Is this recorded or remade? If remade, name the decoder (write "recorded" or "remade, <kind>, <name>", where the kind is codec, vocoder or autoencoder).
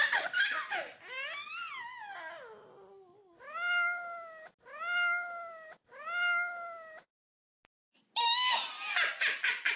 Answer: recorded